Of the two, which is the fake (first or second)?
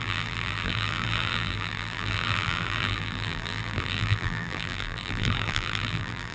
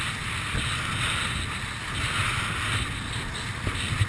first